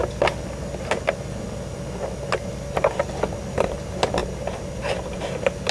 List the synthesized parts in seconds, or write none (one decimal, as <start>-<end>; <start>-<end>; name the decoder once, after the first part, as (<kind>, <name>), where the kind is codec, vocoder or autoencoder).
none